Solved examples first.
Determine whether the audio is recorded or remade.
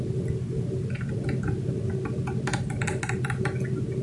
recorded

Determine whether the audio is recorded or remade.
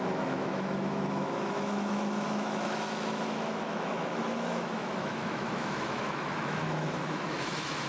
remade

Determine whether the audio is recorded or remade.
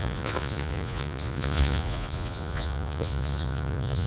remade